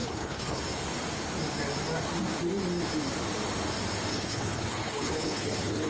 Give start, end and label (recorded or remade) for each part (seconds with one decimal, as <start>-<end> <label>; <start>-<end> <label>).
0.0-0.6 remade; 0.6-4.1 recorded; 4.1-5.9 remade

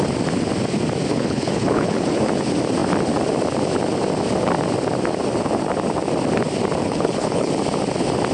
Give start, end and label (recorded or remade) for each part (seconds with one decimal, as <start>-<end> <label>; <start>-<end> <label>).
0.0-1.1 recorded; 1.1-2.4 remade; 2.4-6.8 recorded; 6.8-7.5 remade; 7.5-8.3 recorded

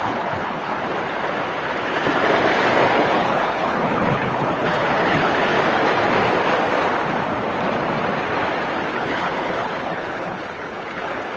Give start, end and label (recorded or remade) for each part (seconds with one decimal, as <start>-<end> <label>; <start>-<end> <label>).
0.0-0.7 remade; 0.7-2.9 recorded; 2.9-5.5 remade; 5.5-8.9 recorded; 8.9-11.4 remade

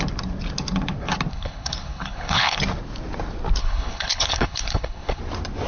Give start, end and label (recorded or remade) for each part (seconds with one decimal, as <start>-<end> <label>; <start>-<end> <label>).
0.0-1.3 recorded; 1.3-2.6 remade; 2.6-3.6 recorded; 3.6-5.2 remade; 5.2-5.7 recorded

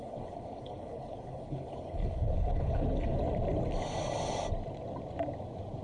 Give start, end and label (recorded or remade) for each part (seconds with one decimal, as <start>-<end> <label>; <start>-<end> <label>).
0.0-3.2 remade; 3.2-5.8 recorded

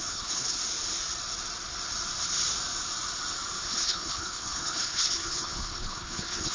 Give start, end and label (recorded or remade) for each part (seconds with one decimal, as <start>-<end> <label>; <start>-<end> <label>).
0.0-0.6 remade; 0.6-3.7 recorded; 3.7-6.5 remade

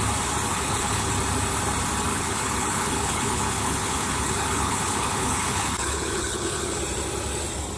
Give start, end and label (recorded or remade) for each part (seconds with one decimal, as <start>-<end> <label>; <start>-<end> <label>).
0.0-0.5 recorded; 0.5-1.1 remade; 1.1-2.1 recorded; 2.1-6.8 remade; 6.8-7.8 recorded